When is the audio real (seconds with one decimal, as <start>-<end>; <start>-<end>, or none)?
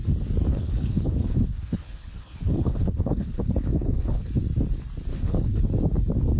0.0-0.5; 4.3-5.1; 5.6-6.4